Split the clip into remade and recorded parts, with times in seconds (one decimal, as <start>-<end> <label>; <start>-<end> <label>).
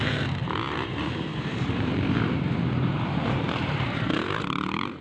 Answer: 0.0-5.0 remade